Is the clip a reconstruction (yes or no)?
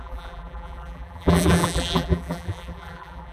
yes